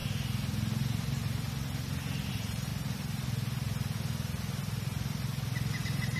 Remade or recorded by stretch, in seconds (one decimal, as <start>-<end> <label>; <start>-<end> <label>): 0.0-2.3 recorded; 2.3-2.7 remade; 2.7-5.8 recorded; 5.8-6.2 remade